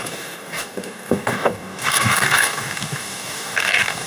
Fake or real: fake